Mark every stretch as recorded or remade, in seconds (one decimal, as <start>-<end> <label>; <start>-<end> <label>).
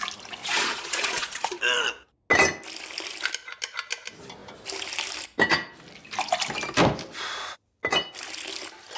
0.0-0.4 recorded; 0.4-1.6 remade; 1.6-9.0 recorded